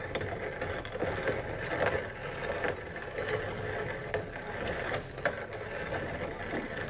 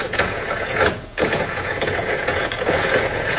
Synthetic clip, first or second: second